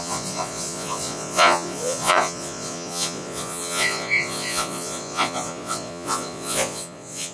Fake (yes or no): yes